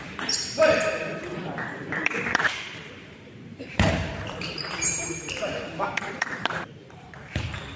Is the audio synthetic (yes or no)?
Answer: yes